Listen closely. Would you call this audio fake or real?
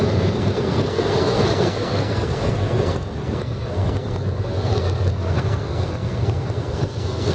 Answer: fake